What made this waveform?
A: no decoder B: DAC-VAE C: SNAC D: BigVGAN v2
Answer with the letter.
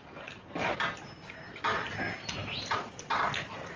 A